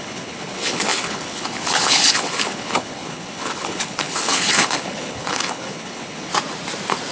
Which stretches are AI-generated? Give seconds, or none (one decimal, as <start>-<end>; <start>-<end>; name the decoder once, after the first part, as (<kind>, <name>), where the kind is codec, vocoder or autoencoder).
0.0-6.3 (codec, HILCodec)

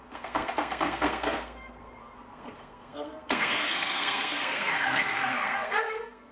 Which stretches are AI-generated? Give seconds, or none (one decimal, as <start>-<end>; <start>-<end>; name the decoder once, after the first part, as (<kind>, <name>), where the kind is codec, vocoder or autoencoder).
0.0-6.3 (codec, SNAC)